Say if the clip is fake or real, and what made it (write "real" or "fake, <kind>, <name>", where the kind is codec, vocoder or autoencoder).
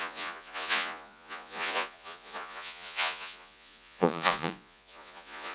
fake, vocoder, Vocos